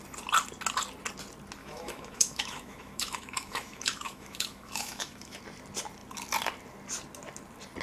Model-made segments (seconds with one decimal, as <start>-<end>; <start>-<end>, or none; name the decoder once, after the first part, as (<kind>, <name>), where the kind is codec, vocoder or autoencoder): 1.6-5.4 (autoencoder, DAC-VAE)